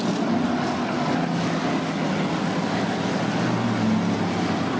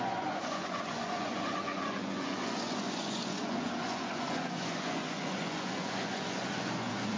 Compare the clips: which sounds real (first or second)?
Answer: first